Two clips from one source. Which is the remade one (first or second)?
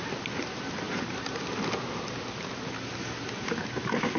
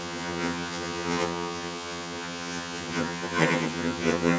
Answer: second